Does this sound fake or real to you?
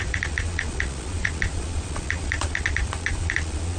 fake